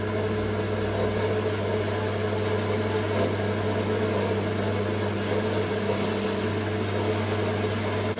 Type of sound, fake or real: real